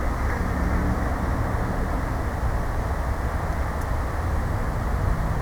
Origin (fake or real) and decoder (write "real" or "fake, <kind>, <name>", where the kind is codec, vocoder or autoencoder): real